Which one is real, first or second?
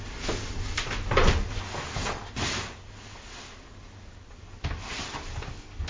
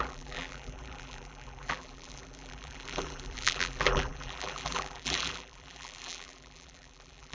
first